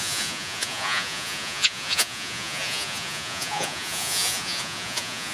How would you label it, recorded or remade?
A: remade